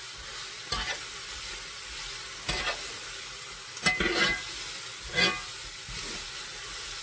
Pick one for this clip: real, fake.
real